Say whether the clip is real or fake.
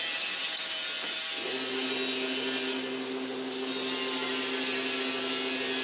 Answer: real